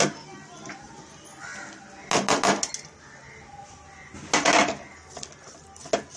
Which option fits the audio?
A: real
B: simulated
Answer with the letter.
A